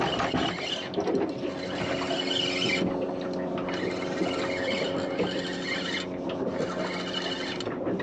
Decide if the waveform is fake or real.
real